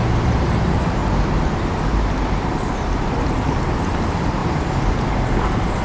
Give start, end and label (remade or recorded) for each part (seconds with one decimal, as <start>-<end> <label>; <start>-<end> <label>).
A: 0.0-1.0 remade; 1.0-2.4 recorded; 2.4-5.8 remade